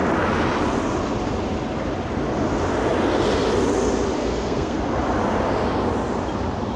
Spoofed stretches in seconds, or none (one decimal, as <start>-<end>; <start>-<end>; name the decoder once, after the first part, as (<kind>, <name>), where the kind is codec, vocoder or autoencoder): 4.2-4.8 (codec, SNAC)